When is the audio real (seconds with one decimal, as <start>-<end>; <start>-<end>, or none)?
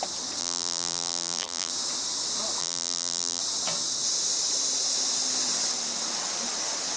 0.0-0.4; 1.7-2.6; 3.4-7.0